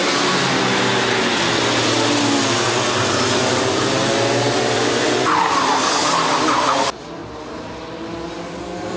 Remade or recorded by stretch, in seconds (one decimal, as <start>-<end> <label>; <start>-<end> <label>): 0.0-4.7 recorded; 4.7-5.7 remade; 5.7-6.5 recorded; 6.5-7.2 remade; 7.2-8.5 recorded; 8.5-9.0 remade

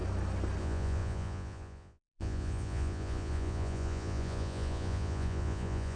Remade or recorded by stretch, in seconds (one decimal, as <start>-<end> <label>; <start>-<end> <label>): 0.0-0.6 recorded; 0.6-6.0 remade

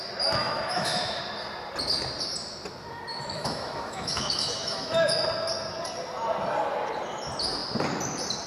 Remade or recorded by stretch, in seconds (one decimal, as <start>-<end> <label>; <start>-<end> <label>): 0.0-0.4 recorded; 0.4-1.2 remade; 1.2-3.1 recorded; 3.1-5.1 remade; 5.1-8.5 recorded

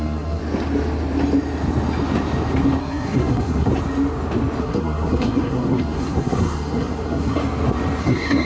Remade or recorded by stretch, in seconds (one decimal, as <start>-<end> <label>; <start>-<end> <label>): 0.0-0.4 remade; 0.4-2.8 recorded; 2.8-3.7 remade; 3.7-4.6 recorded; 4.6-7.4 remade; 7.4-8.0 recorded; 8.0-8.5 remade

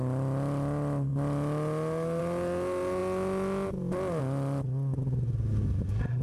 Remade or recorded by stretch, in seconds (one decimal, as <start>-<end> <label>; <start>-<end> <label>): 0.0-6.2 recorded